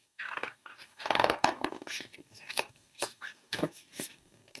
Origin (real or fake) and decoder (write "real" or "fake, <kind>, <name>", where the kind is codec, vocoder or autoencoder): fake, codec, DAC